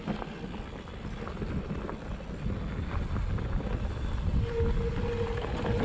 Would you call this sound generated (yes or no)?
no